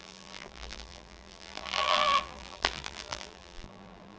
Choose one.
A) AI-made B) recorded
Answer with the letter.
A